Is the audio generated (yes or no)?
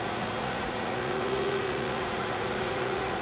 yes